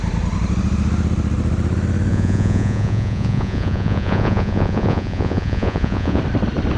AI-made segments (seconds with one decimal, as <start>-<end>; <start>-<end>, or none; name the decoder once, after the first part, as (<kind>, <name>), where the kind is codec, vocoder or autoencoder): 2.1-6.2 (vocoder, Vocos)